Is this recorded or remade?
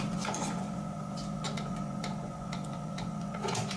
remade